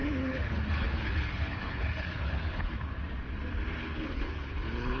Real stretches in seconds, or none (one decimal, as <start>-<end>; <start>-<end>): 3.0-3.8